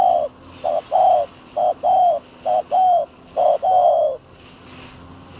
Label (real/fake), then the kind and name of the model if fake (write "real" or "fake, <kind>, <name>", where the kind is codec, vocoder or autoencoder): real